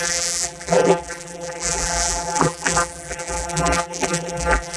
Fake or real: fake